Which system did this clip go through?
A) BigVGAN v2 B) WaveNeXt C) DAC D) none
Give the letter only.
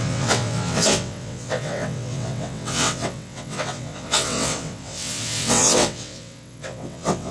B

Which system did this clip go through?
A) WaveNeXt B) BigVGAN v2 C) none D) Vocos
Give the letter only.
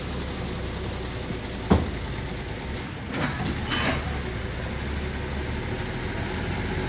C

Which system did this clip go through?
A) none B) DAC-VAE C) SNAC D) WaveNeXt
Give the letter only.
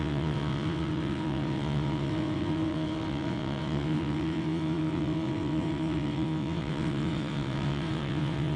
D